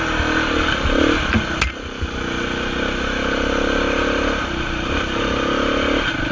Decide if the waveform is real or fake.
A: real